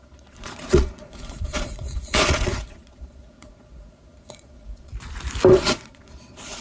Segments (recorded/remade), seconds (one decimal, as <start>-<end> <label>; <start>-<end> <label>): 0.0-4.9 remade; 4.9-5.5 recorded; 5.5-6.6 remade